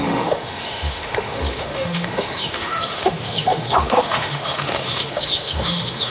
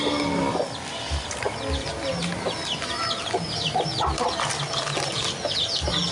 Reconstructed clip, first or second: first